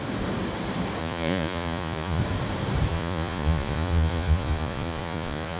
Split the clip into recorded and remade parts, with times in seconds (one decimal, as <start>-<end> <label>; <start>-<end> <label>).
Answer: 0.0-1.0 recorded; 1.0-2.2 remade; 2.2-2.9 recorded; 2.9-5.6 remade